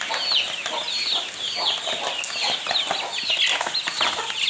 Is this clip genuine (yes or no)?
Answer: yes